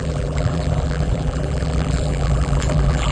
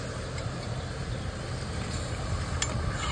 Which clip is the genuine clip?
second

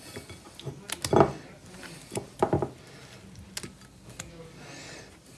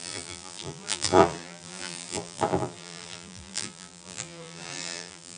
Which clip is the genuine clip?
first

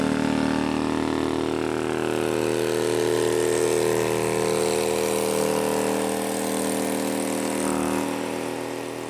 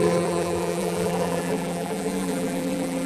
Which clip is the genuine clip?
first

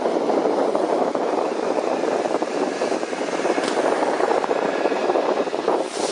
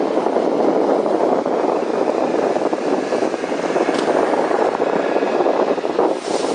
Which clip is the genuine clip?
second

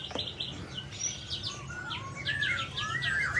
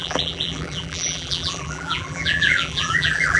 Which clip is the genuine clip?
first